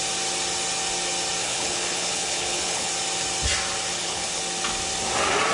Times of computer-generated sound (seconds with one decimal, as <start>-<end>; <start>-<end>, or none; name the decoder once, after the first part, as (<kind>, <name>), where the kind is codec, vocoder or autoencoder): 1.4-2.9 (codec, HILCodec); 3.9-4.4